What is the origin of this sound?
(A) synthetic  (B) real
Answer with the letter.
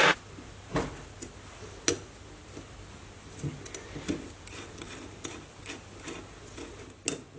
B